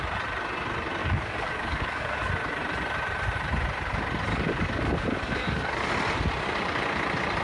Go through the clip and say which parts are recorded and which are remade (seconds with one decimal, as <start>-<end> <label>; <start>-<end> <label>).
0.0-1.0 recorded; 1.0-2.3 remade; 2.3-4.3 recorded; 4.3-5.9 remade; 5.9-7.4 recorded